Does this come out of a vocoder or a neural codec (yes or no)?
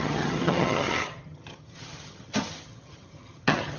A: yes